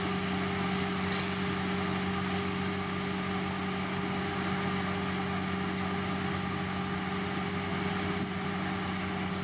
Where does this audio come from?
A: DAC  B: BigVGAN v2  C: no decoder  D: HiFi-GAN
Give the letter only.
C